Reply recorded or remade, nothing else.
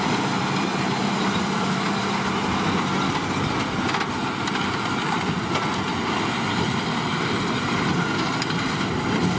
recorded